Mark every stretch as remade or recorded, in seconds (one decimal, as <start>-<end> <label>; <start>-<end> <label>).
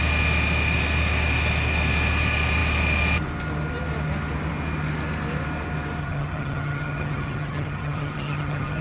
0.0-6.0 recorded; 6.0-8.8 remade